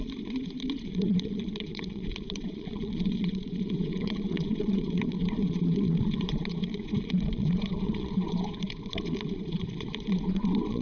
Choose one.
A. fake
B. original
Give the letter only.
A